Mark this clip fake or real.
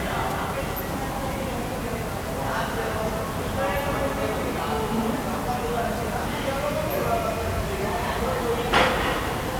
real